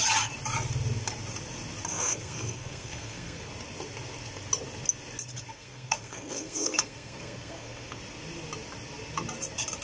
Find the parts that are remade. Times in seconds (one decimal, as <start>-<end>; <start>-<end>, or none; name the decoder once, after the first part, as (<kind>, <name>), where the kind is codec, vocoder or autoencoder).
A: 1.9-3.5 (codec, SNAC); 5.5-8.0

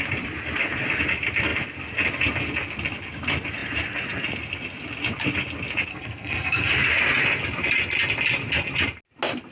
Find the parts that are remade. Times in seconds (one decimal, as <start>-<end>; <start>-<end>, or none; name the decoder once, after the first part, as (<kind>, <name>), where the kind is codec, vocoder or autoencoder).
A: 5.9-6.7 (codec, SNAC)

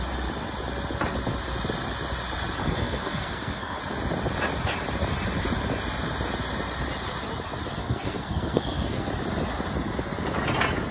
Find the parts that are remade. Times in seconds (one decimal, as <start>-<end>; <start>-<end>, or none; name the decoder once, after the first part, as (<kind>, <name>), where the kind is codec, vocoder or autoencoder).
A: 2.6-3.8 (codec, SNAC); 7.8-9.1

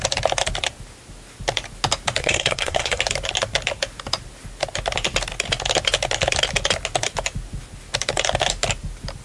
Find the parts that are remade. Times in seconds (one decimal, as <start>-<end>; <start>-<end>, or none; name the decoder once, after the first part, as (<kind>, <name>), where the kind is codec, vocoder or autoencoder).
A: 2.2-3.0 (codec, SNAC)